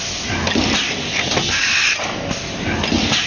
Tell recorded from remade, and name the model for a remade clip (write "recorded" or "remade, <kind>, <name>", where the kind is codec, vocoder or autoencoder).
recorded